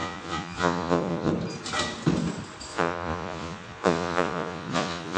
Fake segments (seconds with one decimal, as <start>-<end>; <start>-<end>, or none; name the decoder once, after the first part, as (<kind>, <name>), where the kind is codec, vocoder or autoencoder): 0.0-1.3 (vocoder, Vocos); 2.7-5.2